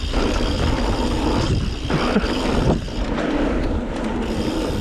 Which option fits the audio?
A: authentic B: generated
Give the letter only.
A